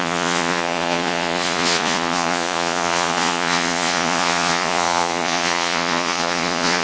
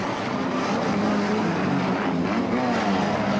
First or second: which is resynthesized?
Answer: first